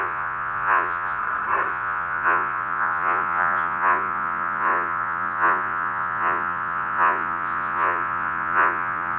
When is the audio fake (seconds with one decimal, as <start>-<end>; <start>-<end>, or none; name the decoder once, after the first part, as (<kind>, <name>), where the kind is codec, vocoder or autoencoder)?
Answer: 0.0-1.2 (vocoder, Vocos); 1.7-9.2